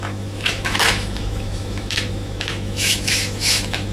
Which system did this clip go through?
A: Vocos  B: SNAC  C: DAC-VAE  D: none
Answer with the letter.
C